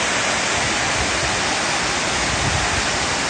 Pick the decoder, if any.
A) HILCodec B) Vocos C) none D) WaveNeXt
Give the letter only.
C